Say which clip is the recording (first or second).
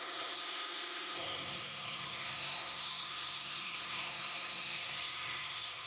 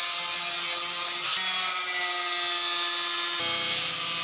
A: second